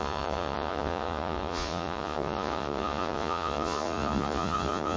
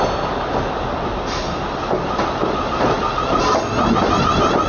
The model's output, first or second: first